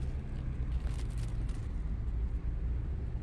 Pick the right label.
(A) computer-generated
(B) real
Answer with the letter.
B